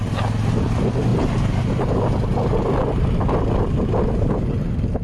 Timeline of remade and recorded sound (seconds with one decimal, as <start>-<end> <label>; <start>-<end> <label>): 0.0-5.0 recorded

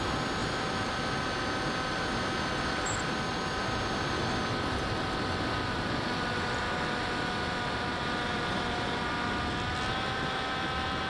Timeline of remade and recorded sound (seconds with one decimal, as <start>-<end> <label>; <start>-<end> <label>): 0.0-11.1 recorded